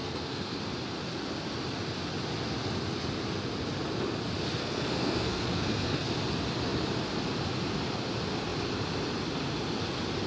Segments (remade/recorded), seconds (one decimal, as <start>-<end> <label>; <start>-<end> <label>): 0.0-0.6 remade; 0.6-4.6 recorded; 4.6-6.1 remade; 6.1-10.3 recorded